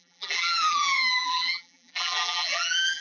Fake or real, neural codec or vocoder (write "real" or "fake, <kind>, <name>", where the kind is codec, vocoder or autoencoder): fake, vocoder, BigVGAN v2